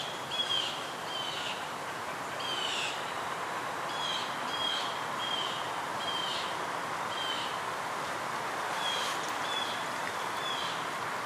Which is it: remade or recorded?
remade